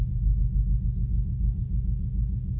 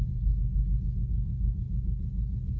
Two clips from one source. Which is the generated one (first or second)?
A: second